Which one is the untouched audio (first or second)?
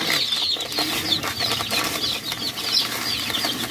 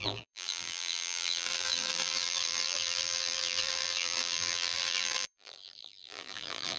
first